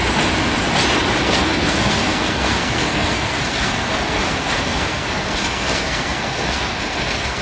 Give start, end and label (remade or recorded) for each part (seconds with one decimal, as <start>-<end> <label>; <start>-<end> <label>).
0.0-1.2 recorded; 1.2-7.4 remade